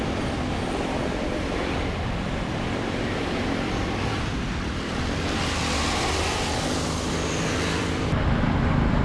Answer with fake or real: fake